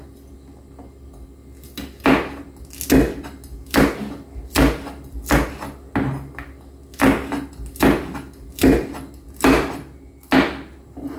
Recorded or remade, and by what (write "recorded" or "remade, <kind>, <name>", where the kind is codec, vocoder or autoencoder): recorded